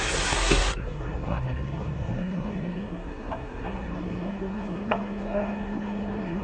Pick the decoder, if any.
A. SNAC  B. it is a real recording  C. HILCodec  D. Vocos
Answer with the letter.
A